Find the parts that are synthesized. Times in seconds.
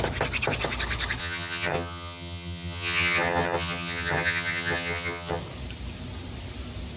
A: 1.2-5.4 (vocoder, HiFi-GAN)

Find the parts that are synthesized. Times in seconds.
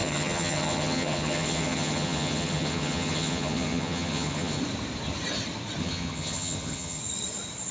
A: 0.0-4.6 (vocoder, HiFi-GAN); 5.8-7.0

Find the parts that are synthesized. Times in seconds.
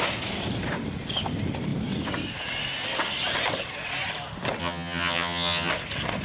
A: 4.6-5.7 (vocoder, HiFi-GAN)